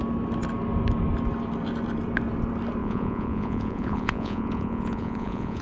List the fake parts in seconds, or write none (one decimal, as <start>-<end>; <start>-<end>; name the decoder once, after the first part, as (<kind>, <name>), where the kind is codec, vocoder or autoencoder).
2.8-5.6 (vocoder, Vocos)